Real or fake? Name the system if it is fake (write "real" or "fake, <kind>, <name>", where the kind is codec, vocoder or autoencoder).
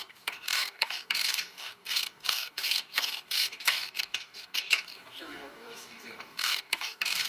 fake, codec, DAC